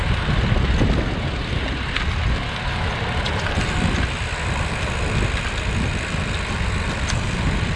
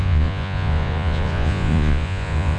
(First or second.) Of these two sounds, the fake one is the second